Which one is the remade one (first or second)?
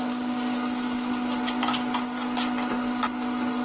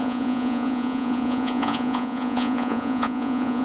second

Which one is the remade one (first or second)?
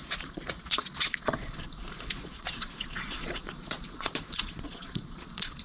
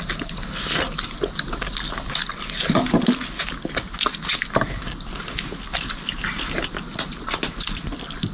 first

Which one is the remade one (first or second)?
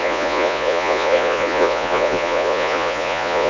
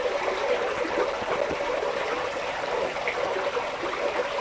first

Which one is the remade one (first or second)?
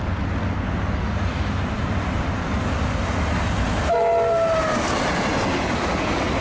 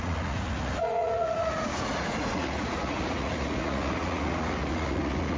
second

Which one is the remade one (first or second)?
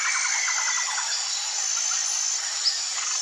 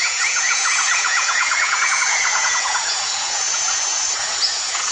second